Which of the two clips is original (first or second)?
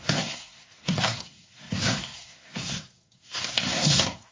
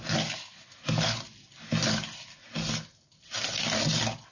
second